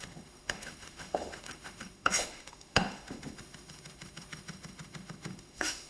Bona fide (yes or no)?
no